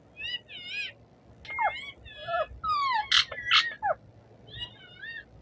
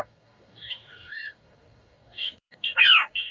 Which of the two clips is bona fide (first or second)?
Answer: first